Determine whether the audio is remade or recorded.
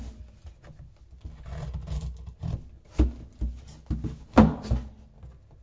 recorded